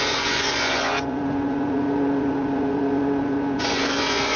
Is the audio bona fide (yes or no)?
no